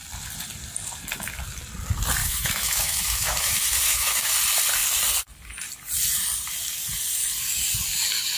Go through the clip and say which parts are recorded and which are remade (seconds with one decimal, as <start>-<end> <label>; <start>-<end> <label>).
0.0-2.2 recorded; 2.2-4.3 remade; 4.3-8.4 recorded